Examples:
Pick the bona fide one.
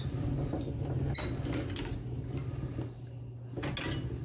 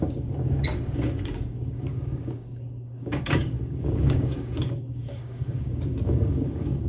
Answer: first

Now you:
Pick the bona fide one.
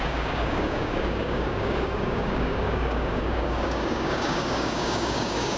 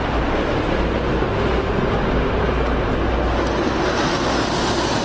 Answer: second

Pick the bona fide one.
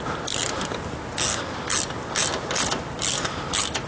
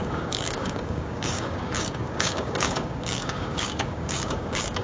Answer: first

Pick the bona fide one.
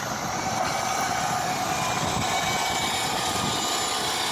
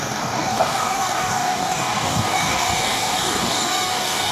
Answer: first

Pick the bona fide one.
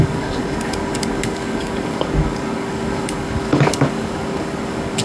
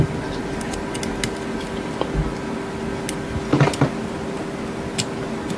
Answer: second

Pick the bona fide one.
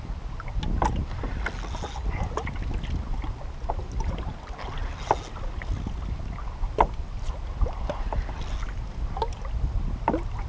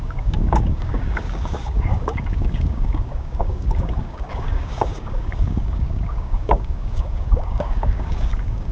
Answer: first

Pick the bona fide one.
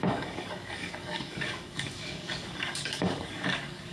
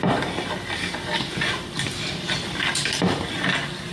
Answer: second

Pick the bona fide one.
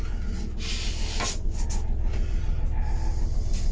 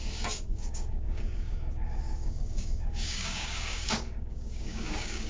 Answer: first